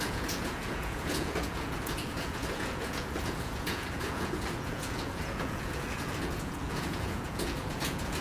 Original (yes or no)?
no